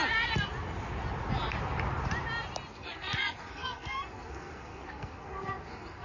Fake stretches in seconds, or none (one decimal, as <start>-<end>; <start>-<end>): 2.7-6.0